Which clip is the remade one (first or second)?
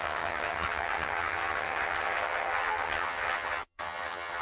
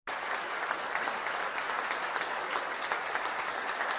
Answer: first